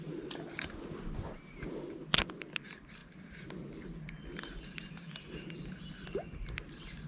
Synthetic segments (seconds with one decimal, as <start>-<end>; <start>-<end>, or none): none

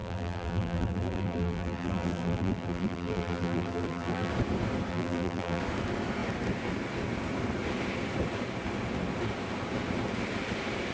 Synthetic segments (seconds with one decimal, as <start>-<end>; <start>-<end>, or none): 0.0-4.3; 4.9-5.6

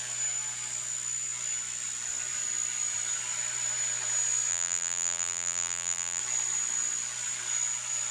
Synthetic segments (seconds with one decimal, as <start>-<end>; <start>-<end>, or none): 4.5-6.2

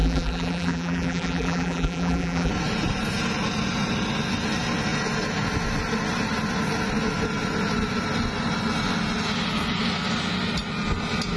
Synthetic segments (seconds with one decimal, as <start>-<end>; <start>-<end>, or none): 0.0-2.5